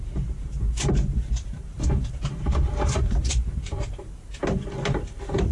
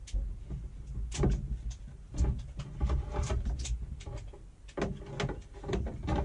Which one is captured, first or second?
second